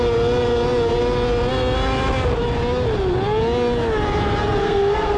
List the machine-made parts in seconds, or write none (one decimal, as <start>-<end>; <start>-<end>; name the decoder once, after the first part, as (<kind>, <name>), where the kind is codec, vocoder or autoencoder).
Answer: 4.6-5.2 (codec, SNAC)